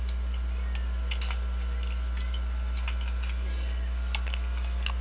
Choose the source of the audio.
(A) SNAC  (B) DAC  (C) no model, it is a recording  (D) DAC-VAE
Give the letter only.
C